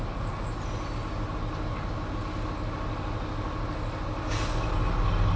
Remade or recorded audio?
recorded